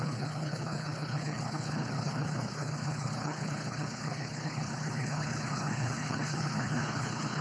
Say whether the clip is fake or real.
fake